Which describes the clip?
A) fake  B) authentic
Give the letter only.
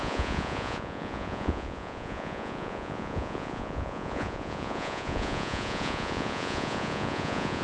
A